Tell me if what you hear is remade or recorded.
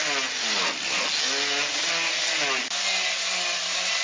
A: recorded